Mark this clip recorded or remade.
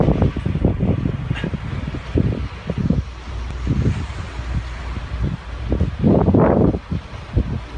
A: recorded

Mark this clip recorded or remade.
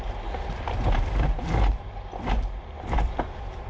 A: remade